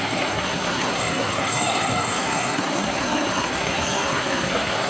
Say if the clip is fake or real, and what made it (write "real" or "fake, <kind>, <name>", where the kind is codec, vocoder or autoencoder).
fake, codec, SNAC